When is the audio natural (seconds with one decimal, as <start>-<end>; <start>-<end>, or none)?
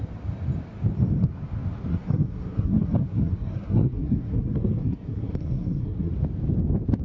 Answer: 0.0-1.9; 6.1-7.0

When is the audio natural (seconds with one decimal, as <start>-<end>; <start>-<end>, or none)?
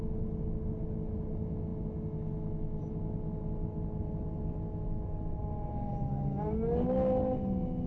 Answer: 0.0-7.9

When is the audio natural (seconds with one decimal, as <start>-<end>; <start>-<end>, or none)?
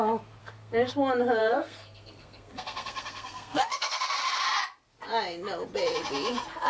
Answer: 0.0-0.4; 0.9-1.4; 4.0-6.7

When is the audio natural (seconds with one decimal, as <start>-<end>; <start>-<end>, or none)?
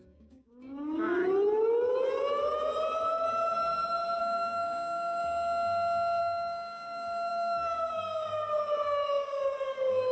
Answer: 1.2-4.2; 5.2-6.2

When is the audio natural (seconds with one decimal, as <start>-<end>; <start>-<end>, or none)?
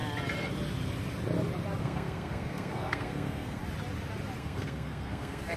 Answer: 0.0-1.8; 3.6-4.4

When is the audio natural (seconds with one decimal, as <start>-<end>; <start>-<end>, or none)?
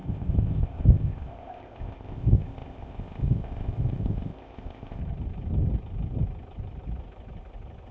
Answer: 5.0-7.9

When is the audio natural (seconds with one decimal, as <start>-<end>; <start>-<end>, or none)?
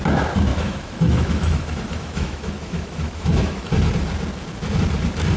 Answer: 0.0-0.5; 3.7-5.4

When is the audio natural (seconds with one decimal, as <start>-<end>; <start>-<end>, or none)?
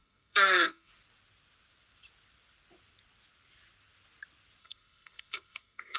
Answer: 0.9-4.6